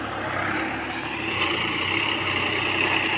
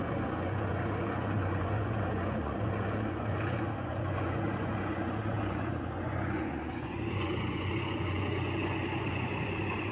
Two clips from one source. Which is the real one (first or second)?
first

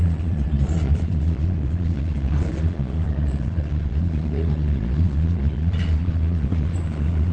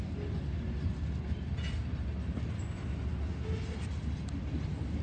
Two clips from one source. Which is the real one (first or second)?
second